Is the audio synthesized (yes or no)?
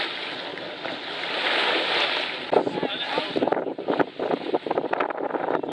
no